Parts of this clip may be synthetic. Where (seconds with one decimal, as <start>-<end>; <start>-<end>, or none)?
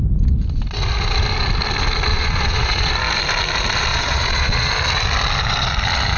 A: 2.1-2.9; 3.9-4.7